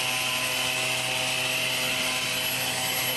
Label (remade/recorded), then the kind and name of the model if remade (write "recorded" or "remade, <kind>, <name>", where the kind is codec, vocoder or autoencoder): recorded